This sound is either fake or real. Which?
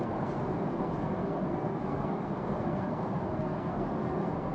fake